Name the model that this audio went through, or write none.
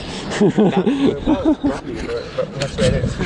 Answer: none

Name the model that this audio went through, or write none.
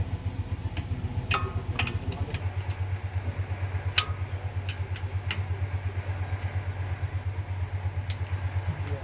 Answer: none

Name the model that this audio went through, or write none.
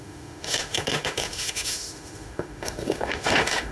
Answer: autoencoder, DAC-VAE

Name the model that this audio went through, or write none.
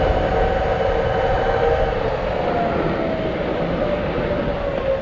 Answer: none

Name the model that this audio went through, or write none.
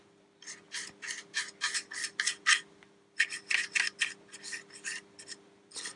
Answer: none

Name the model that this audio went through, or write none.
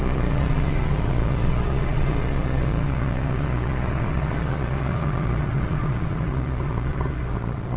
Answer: vocoder, Vocos